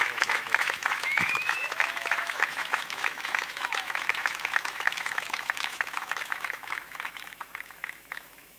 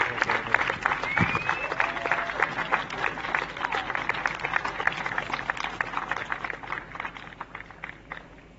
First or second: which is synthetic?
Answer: first